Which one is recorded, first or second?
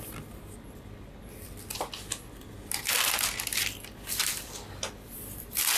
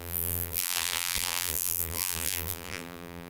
first